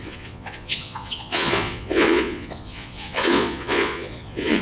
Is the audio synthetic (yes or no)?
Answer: yes